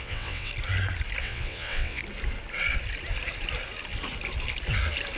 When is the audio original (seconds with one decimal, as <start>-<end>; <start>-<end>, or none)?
0.5-1.2; 2.0-5.2